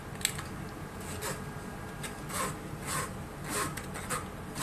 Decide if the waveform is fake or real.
real